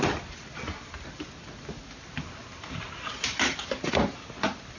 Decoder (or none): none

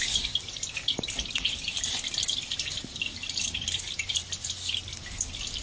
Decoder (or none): vocoder, BigVGAN v2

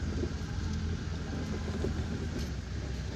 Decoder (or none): none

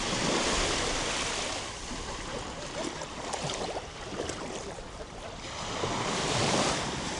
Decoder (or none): vocoder, BigVGAN v2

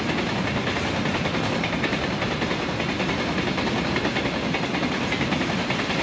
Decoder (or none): none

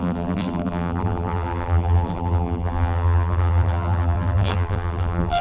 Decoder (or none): vocoder, BigVGAN v2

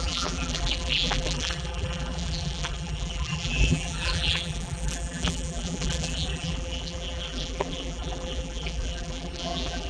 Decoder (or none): vocoder, BigVGAN v2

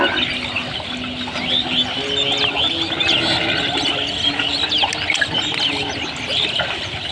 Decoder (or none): none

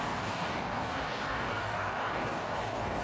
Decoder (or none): codec, DAC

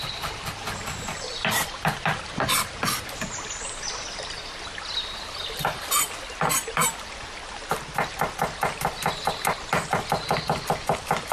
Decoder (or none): none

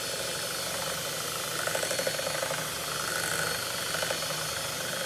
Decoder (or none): none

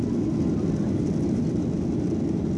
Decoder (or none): none